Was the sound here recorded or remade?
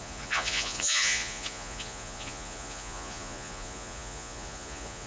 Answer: remade